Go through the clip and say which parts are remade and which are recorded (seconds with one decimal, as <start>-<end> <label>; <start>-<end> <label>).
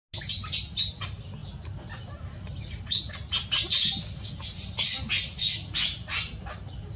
0.0-7.0 recorded